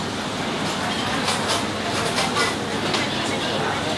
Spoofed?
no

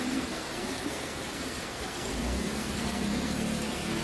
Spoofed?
yes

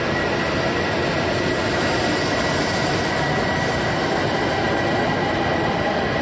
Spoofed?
no